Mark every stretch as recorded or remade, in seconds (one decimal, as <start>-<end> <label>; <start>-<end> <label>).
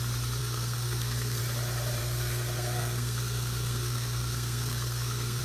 0.0-0.4 recorded; 0.4-1.4 remade; 1.4-2.0 recorded; 2.0-5.4 remade